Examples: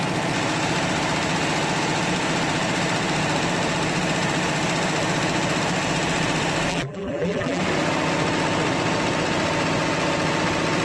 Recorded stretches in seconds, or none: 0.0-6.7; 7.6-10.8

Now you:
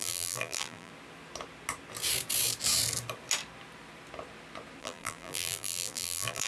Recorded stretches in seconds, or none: 0.9-4.8

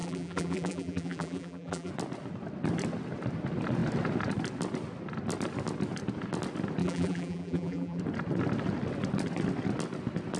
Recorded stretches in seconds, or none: 1.9-6.8; 8.0-10.4

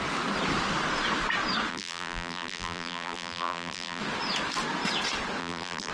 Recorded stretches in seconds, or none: 0.0-1.7; 4.0-5.4

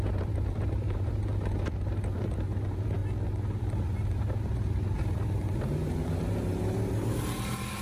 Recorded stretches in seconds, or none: 3.0-3.6